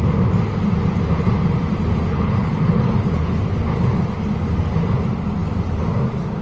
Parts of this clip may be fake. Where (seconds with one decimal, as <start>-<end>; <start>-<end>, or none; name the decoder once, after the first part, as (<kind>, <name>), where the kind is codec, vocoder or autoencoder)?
2.1-3.4 (codec, HILCodec)